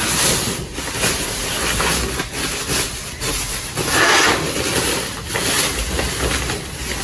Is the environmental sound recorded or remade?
recorded